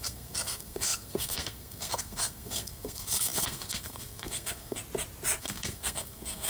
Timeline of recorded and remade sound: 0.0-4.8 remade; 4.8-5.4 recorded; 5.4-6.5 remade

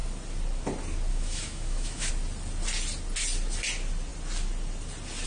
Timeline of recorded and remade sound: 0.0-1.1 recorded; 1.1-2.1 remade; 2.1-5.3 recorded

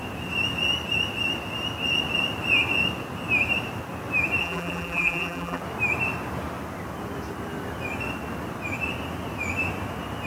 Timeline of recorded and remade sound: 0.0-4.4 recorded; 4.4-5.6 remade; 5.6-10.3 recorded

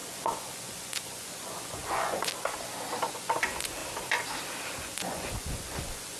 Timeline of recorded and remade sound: 0.0-2.3 remade; 2.3-3.1 recorded; 3.1-3.8 remade; 3.8-4.8 recorded; 4.8-6.2 remade